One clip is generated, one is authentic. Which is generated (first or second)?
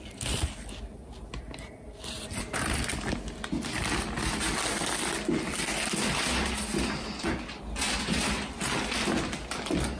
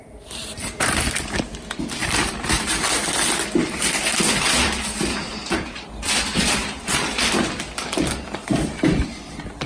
second